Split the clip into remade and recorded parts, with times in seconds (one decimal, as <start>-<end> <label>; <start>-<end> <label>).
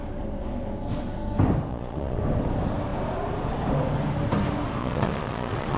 0.0-1.7 recorded; 1.7-2.2 remade; 2.2-4.8 recorded; 4.8-5.8 remade